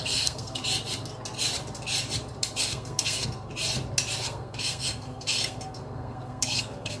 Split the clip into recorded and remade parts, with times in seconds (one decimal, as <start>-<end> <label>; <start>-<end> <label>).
0.0-0.6 remade; 0.6-2.6 recorded; 2.6-3.5 remade; 3.5-4.2 recorded; 4.2-7.0 remade